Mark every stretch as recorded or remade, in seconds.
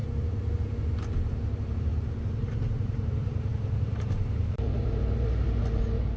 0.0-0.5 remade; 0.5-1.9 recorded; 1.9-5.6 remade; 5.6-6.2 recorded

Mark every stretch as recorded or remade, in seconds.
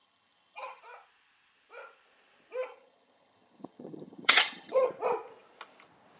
0.0-0.8 remade; 0.8-2.7 recorded; 2.7-4.9 remade; 4.9-6.2 recorded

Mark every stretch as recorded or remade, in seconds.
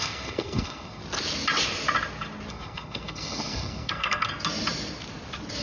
0.0-1.0 remade; 1.0-2.5 recorded; 2.5-4.3 remade; 4.3-5.6 recorded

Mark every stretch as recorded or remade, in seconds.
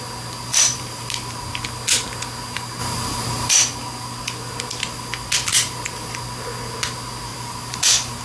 0.0-0.5 recorded; 0.5-1.4 remade; 1.4-2.8 recorded; 2.8-3.5 remade; 3.5-5.5 recorded; 5.5-6.1 remade; 6.1-7.3 recorded; 7.3-8.2 remade